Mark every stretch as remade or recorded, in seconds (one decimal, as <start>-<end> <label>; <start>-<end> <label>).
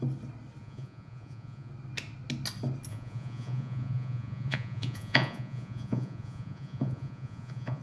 0.0-0.6 recorded; 0.6-1.7 remade; 1.7-2.9 recorded; 2.9-7.8 remade